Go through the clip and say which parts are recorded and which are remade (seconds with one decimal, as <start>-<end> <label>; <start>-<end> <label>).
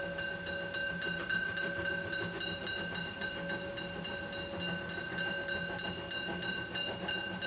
0.0-7.5 recorded